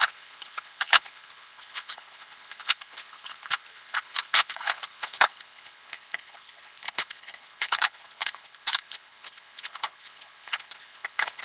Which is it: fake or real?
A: fake